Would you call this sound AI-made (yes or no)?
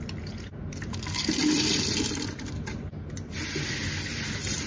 no